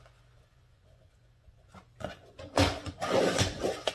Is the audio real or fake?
fake